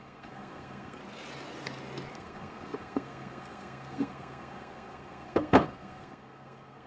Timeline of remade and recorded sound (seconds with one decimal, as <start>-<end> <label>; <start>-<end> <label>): 0.0-1.0 remade; 1.0-2.1 recorded; 2.1-6.9 remade